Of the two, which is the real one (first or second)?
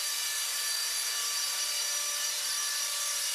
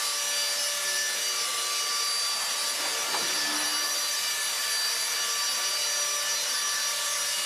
second